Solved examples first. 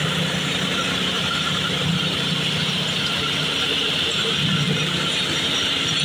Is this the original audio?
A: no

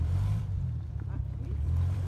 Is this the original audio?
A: no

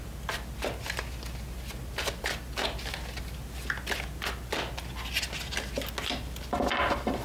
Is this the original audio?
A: yes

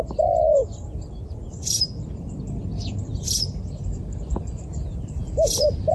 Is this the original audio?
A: yes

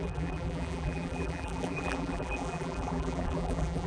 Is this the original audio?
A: no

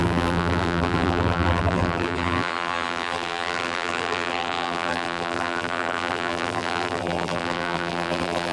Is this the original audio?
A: no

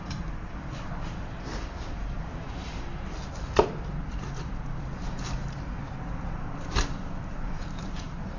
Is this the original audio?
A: no